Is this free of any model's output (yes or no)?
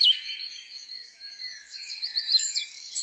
no